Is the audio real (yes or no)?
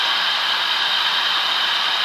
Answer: yes